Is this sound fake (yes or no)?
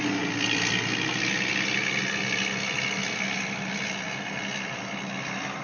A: no